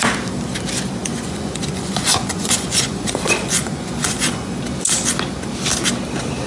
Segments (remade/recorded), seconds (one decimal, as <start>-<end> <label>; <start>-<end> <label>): 0.0-1.0 recorded; 1.0-4.6 remade; 4.6-6.5 recorded